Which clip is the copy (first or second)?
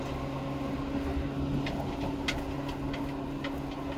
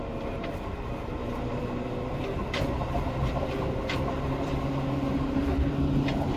second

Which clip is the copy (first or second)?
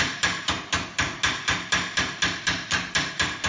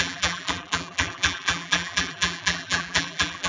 second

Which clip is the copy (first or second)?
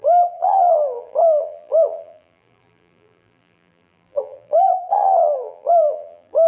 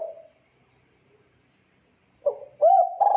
first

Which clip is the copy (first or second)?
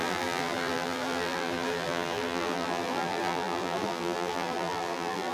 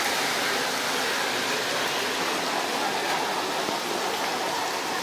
first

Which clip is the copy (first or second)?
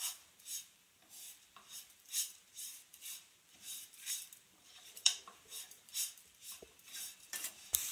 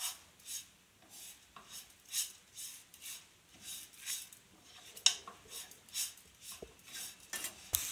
first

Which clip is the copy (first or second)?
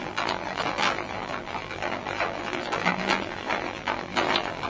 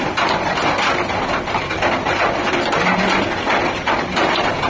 first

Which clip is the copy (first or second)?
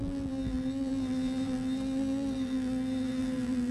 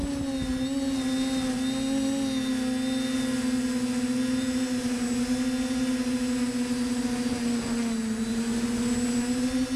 first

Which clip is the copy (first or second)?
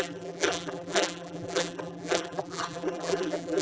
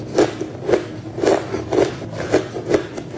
first